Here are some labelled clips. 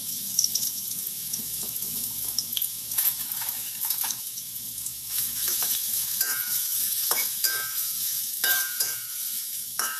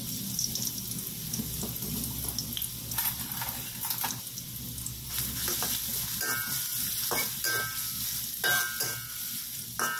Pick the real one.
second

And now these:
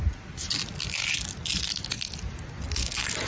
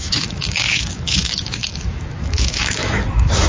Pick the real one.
first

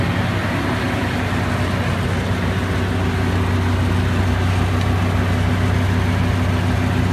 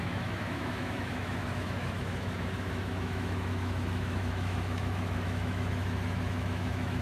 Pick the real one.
first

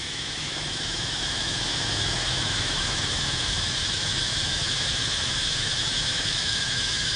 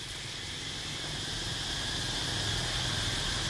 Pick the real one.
second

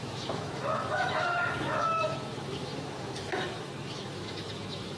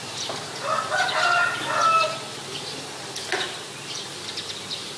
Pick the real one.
second